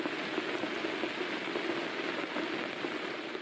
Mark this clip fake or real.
real